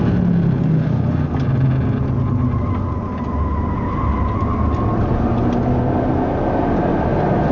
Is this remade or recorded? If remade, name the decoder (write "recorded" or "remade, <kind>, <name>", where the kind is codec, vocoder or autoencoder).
recorded